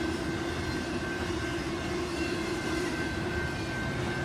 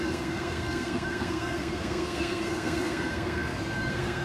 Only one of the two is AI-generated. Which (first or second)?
second